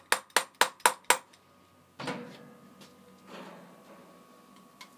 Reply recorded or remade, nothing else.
recorded